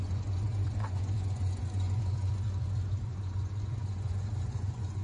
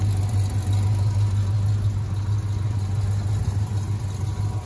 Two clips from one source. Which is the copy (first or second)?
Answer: first